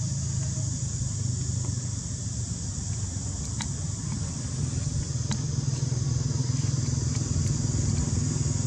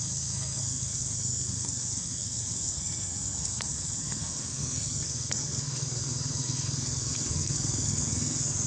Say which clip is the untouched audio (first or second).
first